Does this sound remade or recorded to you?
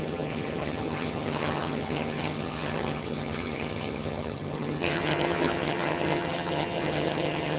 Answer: remade